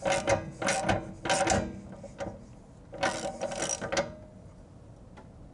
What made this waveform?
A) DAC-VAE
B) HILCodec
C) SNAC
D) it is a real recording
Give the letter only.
D